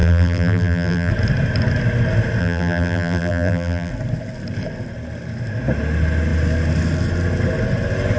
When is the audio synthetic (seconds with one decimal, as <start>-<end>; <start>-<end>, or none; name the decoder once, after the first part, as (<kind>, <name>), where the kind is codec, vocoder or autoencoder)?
0.0-1.1 (vocoder, BigVGAN v2); 2.4-3.9